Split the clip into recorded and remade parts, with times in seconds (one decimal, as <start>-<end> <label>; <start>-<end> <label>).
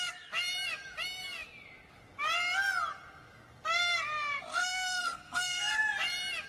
0.0-4.5 recorded; 4.5-5.7 remade; 5.7-6.5 recorded